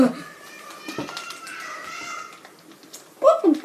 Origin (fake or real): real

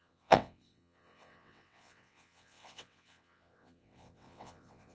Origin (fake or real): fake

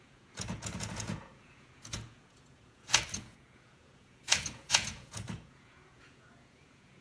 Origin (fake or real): fake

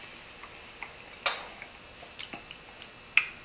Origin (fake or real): real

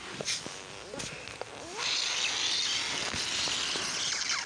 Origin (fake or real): real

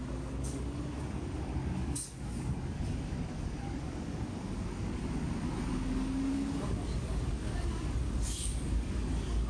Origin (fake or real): fake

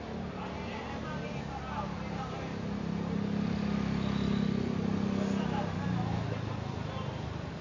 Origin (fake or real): real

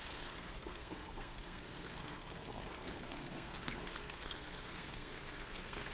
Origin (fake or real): fake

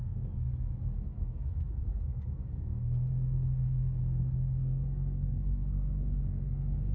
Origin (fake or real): fake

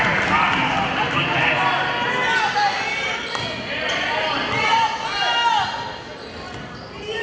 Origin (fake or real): real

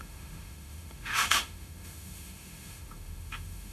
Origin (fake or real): fake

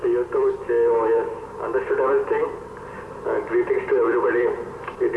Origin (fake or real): fake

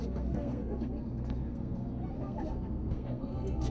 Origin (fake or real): fake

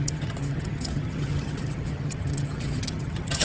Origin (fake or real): fake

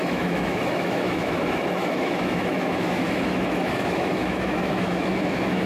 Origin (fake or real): fake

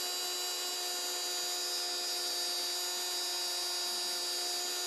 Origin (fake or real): real